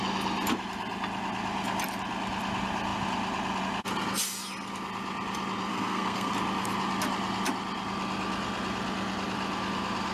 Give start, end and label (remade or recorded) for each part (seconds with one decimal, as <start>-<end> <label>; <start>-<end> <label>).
0.0-5.7 recorded; 5.7-6.3 remade; 6.3-10.1 recorded